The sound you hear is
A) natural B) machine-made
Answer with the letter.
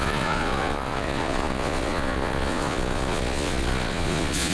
B